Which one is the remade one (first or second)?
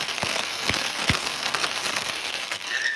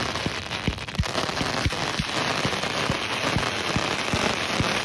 first